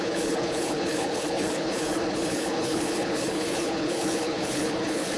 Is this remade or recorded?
remade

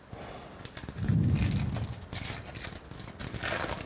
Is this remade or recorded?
recorded